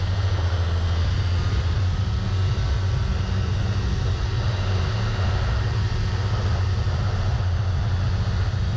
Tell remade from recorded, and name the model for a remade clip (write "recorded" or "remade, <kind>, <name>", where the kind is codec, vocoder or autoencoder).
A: recorded